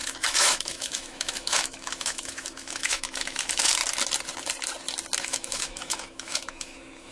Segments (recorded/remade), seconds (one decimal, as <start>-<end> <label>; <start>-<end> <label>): 0.0-3.8 remade; 3.8-5.2 recorded; 5.2-7.1 remade